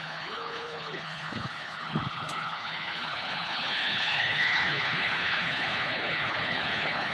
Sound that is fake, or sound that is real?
fake